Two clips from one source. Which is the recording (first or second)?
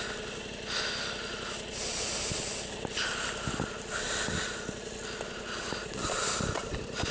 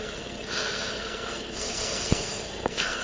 first